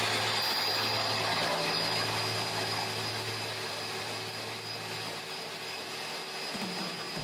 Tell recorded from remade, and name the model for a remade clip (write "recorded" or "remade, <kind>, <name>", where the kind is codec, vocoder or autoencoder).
recorded